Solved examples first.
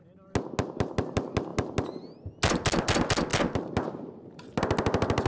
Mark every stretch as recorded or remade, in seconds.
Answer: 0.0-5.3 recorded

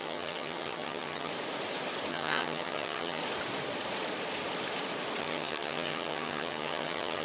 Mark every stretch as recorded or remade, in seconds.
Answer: 0.0-1.3 remade; 1.3-2.1 recorded; 2.1-3.2 remade; 3.2-5.2 recorded; 5.2-7.2 remade

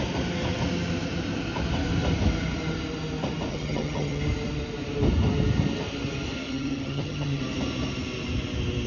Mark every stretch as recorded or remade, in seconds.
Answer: 0.0-3.5 recorded; 3.5-4.2 remade; 4.2-6.5 recorded; 6.5-7.4 remade; 7.4-8.9 recorded

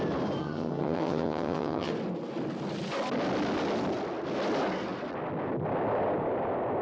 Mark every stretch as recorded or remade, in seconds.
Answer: 0.0-0.4 recorded; 0.4-1.9 remade; 1.9-6.8 recorded

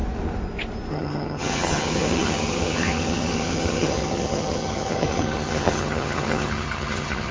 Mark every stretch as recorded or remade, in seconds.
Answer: 0.0-0.9 recorded; 0.9-7.3 remade

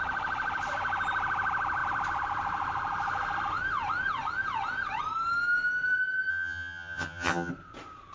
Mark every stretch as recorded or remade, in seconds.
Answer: 0.0-6.3 recorded; 6.3-7.5 remade; 7.5-8.1 recorded